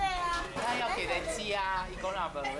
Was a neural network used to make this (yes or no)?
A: no